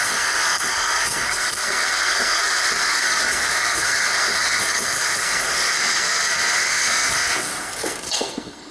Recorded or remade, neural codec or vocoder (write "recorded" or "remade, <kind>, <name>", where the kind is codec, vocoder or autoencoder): remade, codec, SNAC